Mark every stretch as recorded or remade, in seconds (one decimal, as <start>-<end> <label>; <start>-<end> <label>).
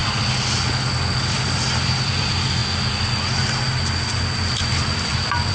0.0-0.7 recorded; 0.7-2.6 remade; 2.6-4.6 recorded; 4.6-5.5 remade